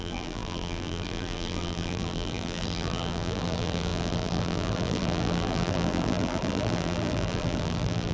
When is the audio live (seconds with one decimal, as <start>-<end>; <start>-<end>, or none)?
none